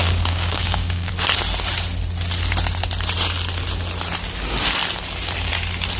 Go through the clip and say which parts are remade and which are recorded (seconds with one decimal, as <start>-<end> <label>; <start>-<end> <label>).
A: 0.0-1.1 remade; 1.1-6.0 recorded